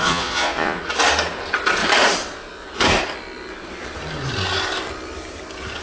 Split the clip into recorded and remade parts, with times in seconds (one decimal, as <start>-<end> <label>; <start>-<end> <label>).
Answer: 0.0-0.8 remade; 0.8-5.8 recorded